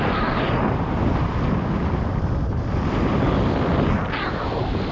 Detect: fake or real real